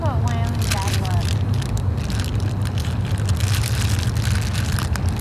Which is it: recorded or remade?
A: recorded